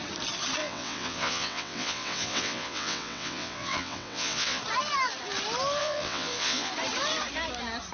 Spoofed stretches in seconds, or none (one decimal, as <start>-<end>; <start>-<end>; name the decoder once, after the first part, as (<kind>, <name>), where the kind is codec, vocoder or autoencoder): 0.6-4.6 (vocoder, WaveNeXt); 5.8-6.7